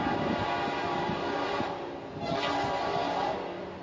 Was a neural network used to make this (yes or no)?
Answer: no